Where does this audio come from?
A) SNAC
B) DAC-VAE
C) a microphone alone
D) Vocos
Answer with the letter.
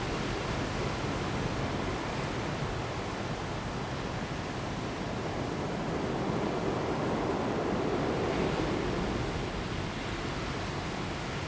C